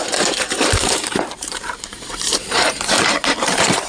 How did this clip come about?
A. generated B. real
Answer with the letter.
A